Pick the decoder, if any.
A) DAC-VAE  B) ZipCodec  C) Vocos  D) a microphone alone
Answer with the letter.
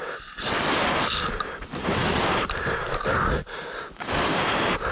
D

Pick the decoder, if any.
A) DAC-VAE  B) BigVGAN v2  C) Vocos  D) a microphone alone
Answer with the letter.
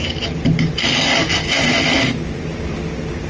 D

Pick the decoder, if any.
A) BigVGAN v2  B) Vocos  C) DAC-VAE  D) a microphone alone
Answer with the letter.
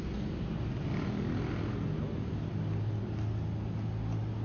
D